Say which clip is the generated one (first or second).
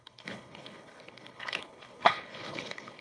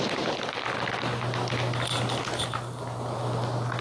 first